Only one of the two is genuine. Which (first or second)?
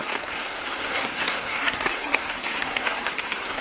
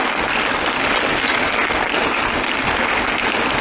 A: second